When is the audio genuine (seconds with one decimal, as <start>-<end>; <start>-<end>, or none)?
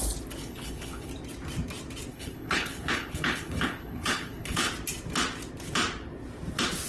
0.0-0.4; 1.1-2.1; 4.7-6.9